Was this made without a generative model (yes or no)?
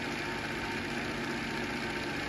yes